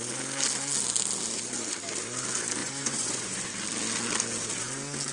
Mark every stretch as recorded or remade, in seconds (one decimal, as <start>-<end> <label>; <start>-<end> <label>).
0.0-2.6 recorded; 2.6-3.5 remade; 3.5-5.1 recorded